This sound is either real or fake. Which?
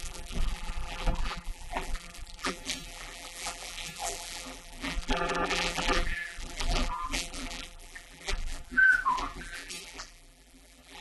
fake